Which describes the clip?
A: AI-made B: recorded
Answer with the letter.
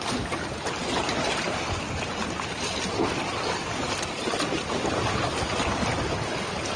B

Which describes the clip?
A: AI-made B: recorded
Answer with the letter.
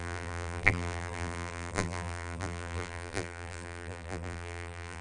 A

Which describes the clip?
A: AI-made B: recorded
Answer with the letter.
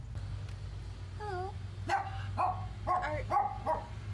B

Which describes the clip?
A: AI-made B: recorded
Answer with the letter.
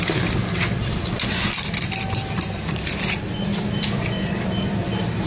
A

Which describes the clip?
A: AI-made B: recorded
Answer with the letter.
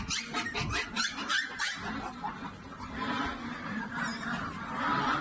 A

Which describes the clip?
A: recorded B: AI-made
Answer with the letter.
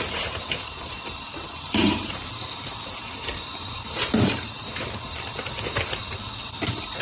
B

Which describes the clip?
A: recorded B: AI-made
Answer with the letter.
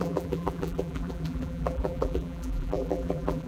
B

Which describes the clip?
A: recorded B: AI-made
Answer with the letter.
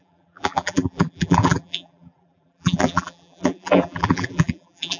B